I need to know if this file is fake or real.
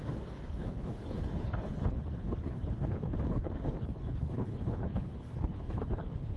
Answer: fake